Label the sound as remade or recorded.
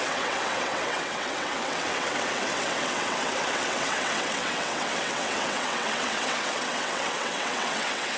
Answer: remade